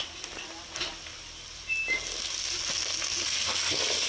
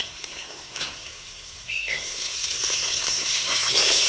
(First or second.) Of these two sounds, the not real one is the second